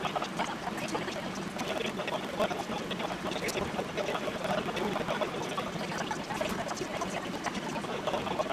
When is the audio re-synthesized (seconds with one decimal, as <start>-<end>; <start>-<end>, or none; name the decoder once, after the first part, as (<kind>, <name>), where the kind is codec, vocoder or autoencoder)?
none